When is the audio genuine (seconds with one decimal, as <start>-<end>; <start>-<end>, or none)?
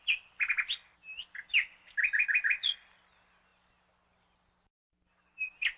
0.0-5.8